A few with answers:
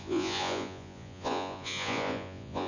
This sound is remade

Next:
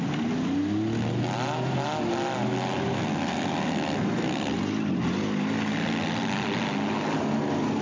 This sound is recorded